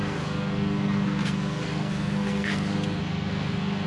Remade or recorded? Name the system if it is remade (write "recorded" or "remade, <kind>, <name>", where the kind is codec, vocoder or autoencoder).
remade, codec, SNAC